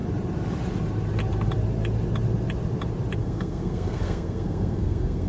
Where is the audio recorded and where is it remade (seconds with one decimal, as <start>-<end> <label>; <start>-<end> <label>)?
0.0-3.2 recorded; 3.2-5.3 remade

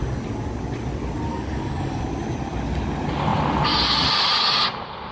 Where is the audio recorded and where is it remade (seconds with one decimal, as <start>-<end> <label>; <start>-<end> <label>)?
0.0-1.3 recorded; 1.3-2.0 remade; 2.0-5.1 recorded

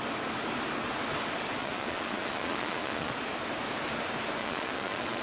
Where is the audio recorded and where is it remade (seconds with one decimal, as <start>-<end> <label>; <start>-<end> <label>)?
0.0-1.6 recorded; 1.6-3.1 remade; 3.1-4.4 recorded; 4.4-5.2 remade

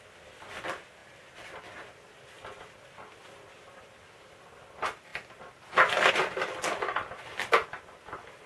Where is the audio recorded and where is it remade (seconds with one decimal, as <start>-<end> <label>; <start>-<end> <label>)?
0.0-8.5 recorded